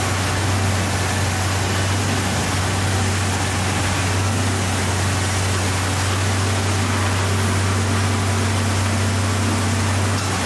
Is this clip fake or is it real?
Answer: real